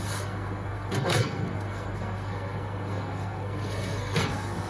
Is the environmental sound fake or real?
fake